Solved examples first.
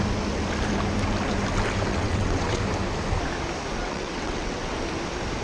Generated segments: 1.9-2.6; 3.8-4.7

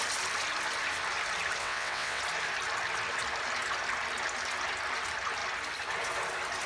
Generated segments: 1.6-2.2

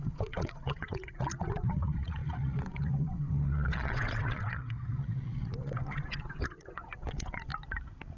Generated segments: 0.0-7.5

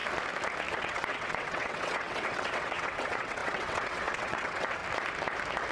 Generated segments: 0.7-4.8

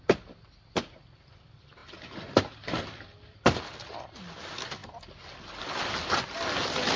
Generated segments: none